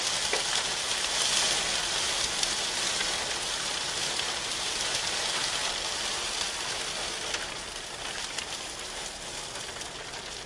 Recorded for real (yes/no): yes